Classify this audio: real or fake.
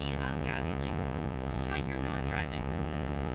fake